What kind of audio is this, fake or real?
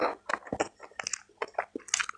real